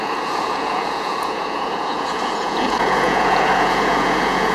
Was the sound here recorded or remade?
remade